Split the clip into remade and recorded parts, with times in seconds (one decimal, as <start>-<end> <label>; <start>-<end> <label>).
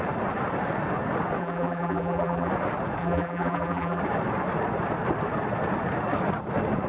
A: 0.0-1.4 recorded; 1.4-2.5 remade; 2.5-3.0 recorded; 3.0-4.0 remade; 4.0-6.9 recorded